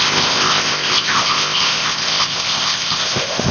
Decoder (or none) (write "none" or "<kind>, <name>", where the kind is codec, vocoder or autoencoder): codec, ZipCodec